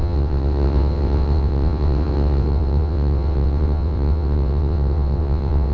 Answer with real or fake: fake